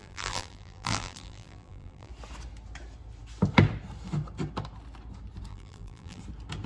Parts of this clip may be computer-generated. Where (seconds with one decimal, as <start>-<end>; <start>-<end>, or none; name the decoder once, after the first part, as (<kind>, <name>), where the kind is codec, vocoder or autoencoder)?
0.0-2.1 (vocoder, BigVGAN v2); 5.5-6.2